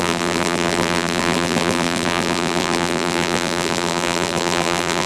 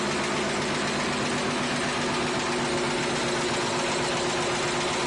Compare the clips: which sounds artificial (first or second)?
first